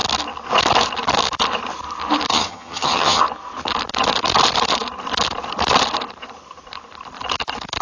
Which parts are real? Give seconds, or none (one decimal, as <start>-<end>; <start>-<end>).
0.0-2.3; 3.2-7.8